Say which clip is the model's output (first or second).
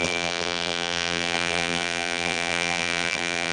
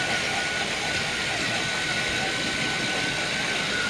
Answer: first